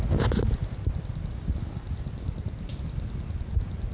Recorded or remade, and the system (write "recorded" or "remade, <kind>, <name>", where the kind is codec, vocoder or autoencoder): recorded